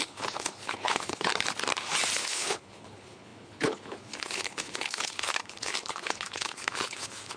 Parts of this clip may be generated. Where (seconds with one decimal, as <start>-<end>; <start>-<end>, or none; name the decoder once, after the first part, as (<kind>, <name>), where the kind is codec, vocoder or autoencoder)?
0.0-1.3 (codec, HILCodec); 2.2-7.4